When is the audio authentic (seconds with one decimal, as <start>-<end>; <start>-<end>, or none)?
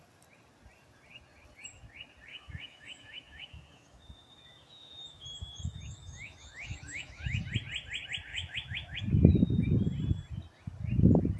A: 0.0-2.3; 7.4-8.3; 9.0-11.4